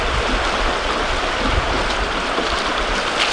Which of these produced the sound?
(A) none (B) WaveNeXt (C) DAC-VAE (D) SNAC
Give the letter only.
A